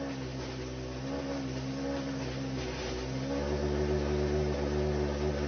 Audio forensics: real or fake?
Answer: real